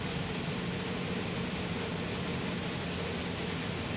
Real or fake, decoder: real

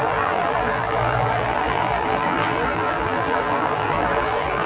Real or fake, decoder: fake, vocoder, BigVGAN v2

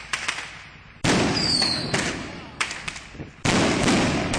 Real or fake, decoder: real